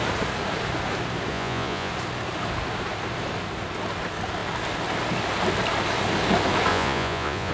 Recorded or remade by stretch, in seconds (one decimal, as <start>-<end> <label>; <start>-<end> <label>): 0.0-1.3 recorded; 1.3-1.9 remade; 1.9-6.7 recorded; 6.7-7.5 remade